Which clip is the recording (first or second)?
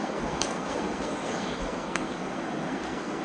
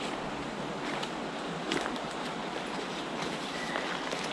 second